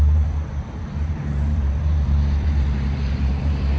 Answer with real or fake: fake